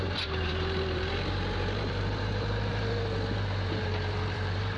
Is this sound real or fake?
fake